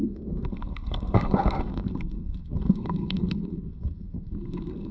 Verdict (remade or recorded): remade